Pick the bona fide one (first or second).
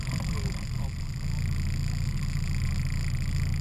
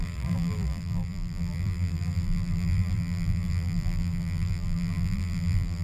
first